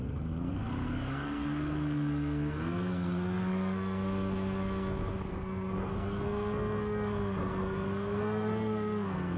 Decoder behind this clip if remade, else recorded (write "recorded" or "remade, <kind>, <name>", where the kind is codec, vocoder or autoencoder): remade, codec, SNAC